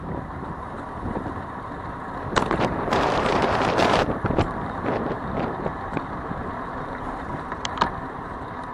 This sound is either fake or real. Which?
fake